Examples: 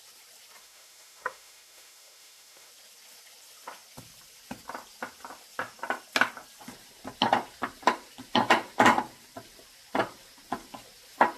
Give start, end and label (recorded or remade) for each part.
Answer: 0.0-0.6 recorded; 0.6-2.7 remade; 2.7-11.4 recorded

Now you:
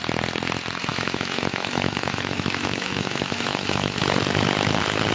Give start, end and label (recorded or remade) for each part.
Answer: 0.0-0.9 recorded; 0.9-4.0 remade; 4.0-5.1 recorded

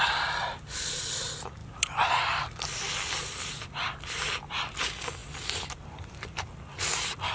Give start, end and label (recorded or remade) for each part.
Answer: 0.0-7.3 recorded

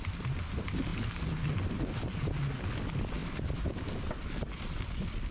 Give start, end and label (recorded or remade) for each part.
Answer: 0.0-5.3 recorded